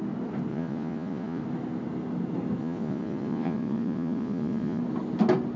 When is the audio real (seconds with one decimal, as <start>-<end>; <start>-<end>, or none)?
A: 0.0-0.5; 1.4-2.6; 4.8-5.6